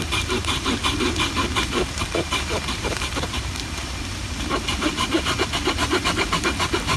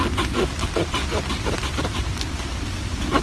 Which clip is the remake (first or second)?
first